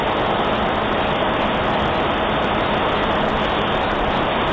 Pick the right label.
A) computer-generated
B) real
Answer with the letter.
B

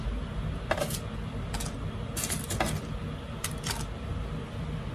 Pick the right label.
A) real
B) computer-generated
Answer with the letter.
A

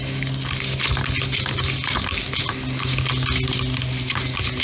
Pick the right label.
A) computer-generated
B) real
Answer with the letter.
B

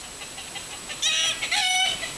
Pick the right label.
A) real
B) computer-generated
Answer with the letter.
A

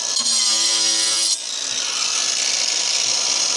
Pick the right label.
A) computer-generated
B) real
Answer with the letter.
B